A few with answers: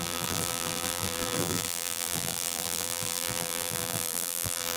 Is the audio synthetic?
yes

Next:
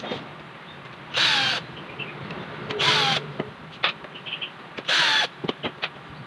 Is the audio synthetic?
yes